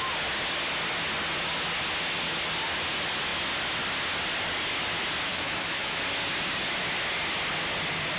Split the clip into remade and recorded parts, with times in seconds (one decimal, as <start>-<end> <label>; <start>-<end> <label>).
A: 0.0-5.3 recorded; 5.3-6.0 remade; 6.0-8.2 recorded